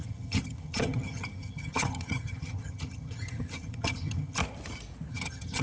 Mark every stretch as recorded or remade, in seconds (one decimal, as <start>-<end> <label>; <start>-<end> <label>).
0.0-4.4 remade; 4.4-5.1 recorded; 5.1-5.6 remade